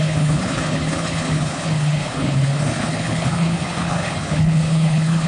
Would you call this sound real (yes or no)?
no